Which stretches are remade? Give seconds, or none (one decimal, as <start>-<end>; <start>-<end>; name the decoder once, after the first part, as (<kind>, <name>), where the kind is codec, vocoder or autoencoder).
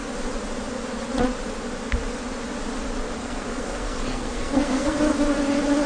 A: 3.2-5.0 (codec, SNAC)